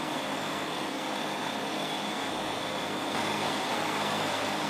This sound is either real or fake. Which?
fake